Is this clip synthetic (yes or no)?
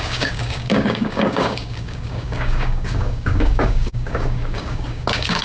yes